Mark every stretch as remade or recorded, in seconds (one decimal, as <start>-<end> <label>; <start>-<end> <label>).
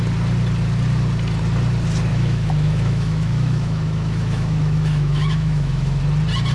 0.0-2.1 recorded; 2.1-6.0 remade; 6.0-6.5 recorded